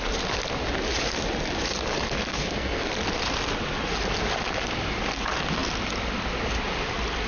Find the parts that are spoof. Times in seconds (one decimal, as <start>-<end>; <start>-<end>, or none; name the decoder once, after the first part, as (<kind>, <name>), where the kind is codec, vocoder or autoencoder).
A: 2.3-2.9 (codec, SNAC)